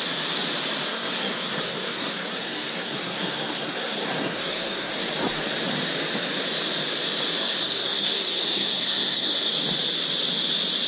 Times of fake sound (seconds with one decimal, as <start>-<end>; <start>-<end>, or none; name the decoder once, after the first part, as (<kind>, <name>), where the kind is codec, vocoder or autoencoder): 0.9-4.9 (codec, SNAC); 7.4-9.5